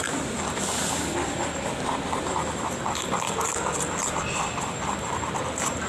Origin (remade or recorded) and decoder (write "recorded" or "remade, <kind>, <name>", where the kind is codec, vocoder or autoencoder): recorded